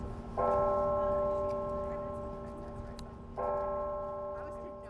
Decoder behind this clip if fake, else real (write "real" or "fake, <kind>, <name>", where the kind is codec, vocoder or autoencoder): real